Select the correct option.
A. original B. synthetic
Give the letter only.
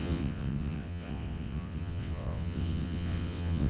B